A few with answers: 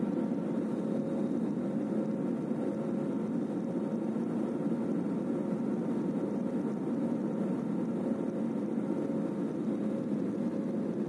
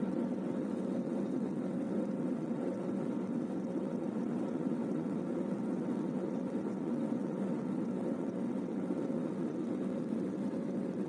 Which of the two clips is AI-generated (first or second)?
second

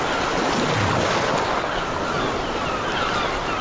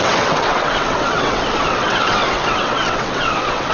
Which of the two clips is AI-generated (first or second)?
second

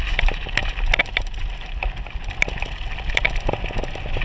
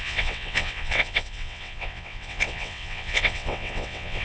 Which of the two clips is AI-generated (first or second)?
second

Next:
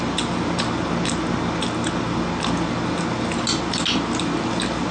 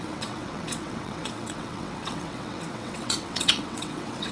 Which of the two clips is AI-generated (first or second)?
second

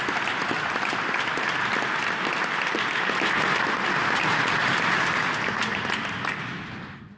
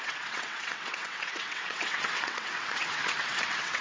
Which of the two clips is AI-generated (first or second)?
second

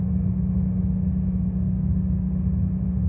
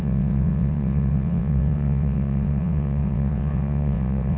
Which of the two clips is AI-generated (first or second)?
second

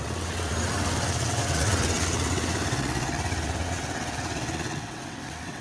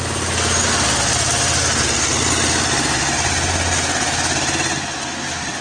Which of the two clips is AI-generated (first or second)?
first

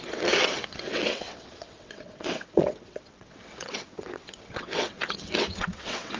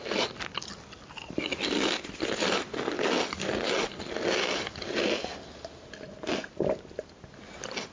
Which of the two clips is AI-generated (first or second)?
first